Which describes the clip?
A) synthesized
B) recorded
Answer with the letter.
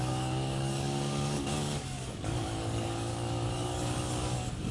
A